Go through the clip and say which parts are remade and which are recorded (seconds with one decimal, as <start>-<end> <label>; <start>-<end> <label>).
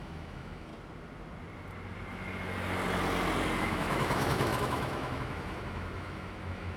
0.0-0.7 remade; 0.7-3.6 recorded; 3.6-6.8 remade